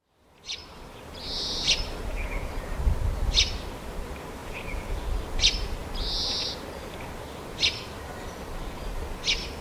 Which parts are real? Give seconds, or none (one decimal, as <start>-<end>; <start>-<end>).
0.0-2.0; 2.5-4.4; 5.0-9.6